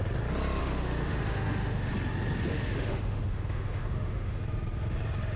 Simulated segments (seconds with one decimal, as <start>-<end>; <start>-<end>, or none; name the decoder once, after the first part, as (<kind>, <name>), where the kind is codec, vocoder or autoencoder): 0.6-1.9 (autoencoder, DAC-VAE); 2.5-4.4